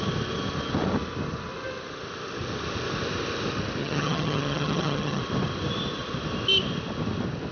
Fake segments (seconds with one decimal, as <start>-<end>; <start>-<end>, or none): 3.8-5.2